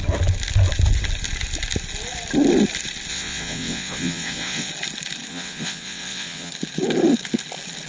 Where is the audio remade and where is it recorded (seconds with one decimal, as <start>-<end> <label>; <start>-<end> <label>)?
0.0-3.1 recorded; 3.1-4.7 remade; 4.7-5.3 recorded; 5.3-6.5 remade; 6.5-7.9 recorded